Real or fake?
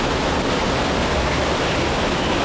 real